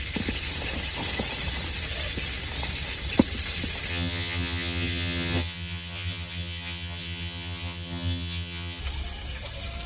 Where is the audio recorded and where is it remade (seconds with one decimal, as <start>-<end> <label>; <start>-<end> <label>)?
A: 0.0-3.9 recorded; 3.9-8.8 remade; 8.8-9.9 recorded

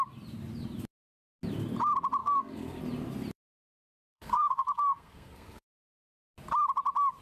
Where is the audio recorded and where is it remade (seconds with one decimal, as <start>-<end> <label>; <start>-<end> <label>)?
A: 0.0-2.2 recorded; 2.2-2.8 remade; 2.8-3.9 recorded; 3.9-6.1 remade; 6.1-7.2 recorded

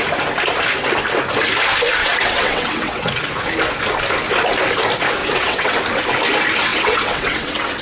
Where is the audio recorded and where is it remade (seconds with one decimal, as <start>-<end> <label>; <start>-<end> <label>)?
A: 0.0-2.0 recorded; 2.0-3.1 remade; 3.1-5.2 recorded; 5.2-5.8 remade; 5.8-6.7 recorded; 6.7-7.8 remade

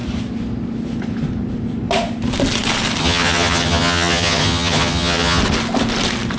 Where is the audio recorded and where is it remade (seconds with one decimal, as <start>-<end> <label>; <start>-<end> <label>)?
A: 0.0-3.0 recorded; 3.0-5.4 remade; 5.4-6.4 recorded

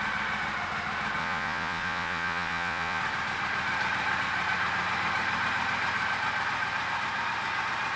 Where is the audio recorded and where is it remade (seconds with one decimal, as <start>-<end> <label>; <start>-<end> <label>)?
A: 0.0-1.2 recorded; 1.2-3.0 remade; 3.0-8.0 recorded

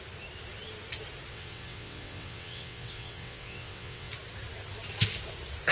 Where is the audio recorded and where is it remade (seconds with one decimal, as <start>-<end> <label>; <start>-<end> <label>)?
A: 0.0-1.3 recorded; 1.3-4.1 remade; 4.1-5.7 recorded

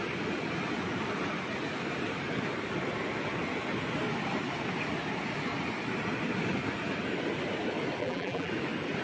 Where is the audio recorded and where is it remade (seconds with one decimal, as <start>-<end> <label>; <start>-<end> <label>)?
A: 0.0-8.0 recorded; 8.0-8.5 remade; 8.5-9.0 recorded